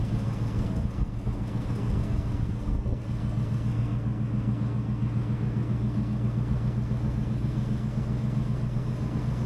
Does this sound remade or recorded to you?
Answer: remade